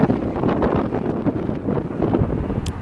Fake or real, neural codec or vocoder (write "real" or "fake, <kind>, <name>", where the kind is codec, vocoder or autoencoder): real